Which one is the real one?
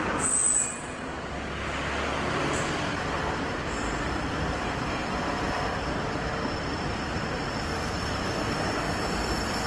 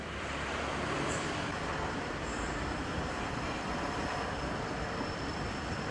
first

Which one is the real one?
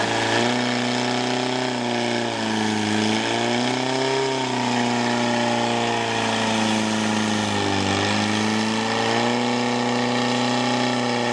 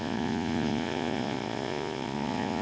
first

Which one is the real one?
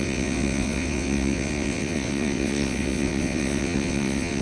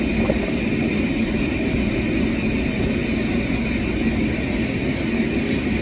second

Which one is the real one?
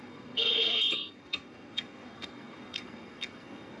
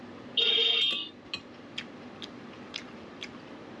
second